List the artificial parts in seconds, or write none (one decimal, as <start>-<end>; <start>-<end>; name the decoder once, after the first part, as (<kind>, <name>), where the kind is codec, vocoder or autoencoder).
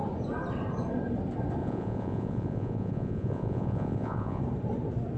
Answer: 1.6-4.4 (vocoder, Vocos)